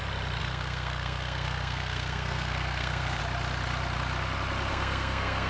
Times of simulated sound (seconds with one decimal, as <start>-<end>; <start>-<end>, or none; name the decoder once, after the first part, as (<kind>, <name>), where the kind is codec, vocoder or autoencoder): 0.4-3.2 (codec, SNAC); 4.7-5.5